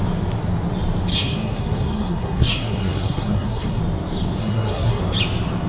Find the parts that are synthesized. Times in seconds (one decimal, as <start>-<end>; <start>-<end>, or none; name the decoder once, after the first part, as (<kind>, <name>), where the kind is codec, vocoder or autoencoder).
1.1-3.8 (codec, SNAC); 4.4-5.0